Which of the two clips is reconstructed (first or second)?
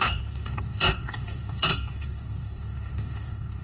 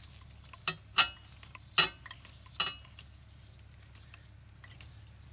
first